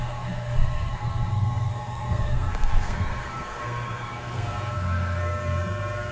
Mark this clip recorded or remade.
remade